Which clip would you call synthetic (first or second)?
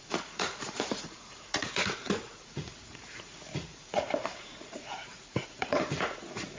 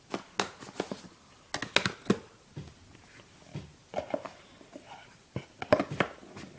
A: first